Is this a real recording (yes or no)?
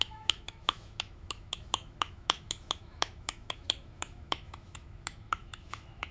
no